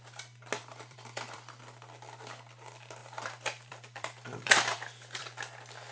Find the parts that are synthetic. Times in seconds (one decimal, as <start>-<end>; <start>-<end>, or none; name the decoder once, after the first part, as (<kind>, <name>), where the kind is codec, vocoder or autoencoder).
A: 0.6-1.6 (vocoder, BigVGAN v2); 3.0-5.4